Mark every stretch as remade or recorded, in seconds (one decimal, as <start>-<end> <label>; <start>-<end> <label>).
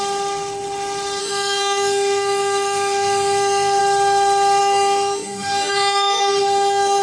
0.0-1.2 recorded; 1.2-3.8 remade; 3.8-4.6 recorded; 4.6-7.0 remade